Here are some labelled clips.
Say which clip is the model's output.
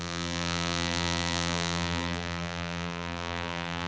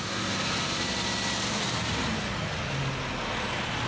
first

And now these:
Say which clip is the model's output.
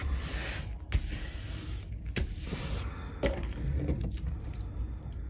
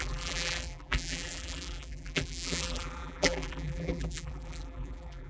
second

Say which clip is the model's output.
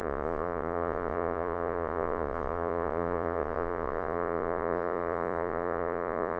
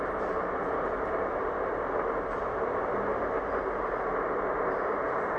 first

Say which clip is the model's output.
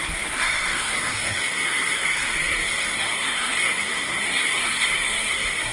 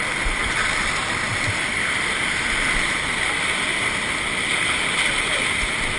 first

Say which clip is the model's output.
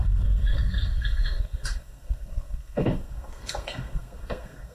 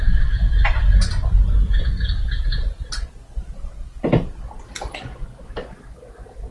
first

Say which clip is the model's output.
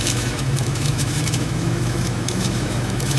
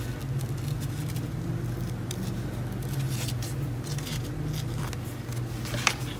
first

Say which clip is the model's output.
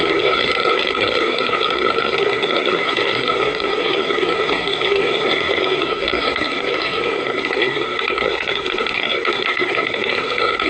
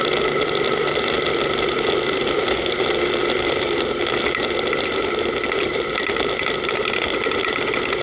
first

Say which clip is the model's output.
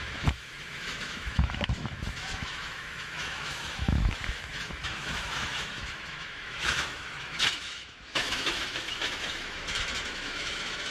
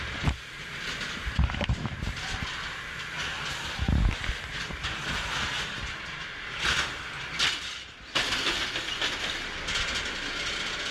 first